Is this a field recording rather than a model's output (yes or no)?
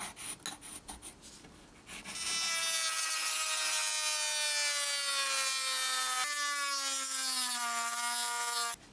yes